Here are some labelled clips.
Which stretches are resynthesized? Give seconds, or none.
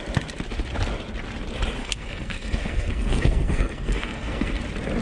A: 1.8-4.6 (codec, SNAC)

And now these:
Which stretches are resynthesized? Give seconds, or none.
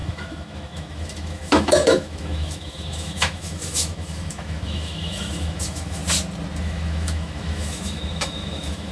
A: 0.0-6.0 (autoencoder, DAC-VAE); 6.6-8.9